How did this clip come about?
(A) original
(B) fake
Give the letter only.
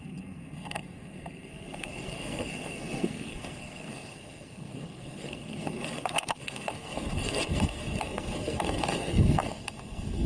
B